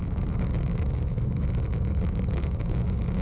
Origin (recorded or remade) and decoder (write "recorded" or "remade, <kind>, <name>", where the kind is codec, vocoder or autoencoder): remade, codec, DAC